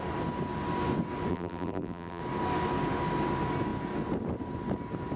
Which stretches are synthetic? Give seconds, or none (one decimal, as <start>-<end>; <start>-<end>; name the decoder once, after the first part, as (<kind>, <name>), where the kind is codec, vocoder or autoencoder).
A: 1.3-2.2 (vocoder, BigVGAN v2)